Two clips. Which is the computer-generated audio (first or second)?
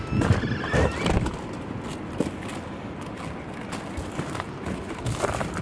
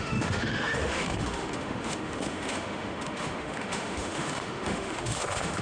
second